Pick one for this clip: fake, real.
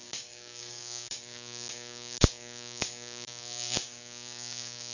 fake